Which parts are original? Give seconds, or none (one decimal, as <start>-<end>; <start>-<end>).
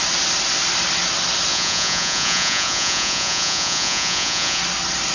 0.0-1.5; 4.6-5.1